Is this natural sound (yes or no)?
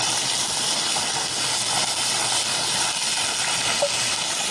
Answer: yes